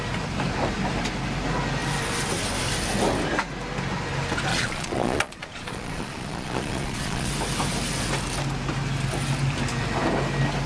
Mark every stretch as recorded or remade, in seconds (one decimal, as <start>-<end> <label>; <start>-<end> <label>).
0.0-4.5 recorded; 4.5-7.3 remade; 7.3-10.7 recorded